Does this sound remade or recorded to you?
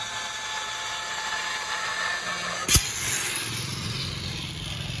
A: recorded